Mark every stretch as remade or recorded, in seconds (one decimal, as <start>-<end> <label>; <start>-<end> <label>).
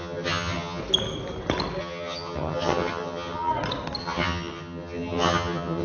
0.0-0.8 remade; 0.8-1.8 recorded; 1.8-3.5 remade; 3.5-4.0 recorded; 4.0-5.8 remade